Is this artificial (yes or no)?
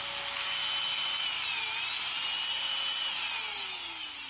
no